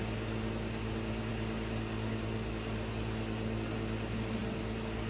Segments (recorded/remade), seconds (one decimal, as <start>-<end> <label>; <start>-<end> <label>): 0.0-5.1 recorded